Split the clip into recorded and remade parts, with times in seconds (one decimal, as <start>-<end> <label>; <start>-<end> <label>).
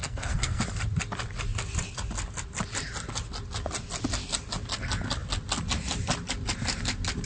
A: 0.0-0.6 remade; 0.6-7.3 recorded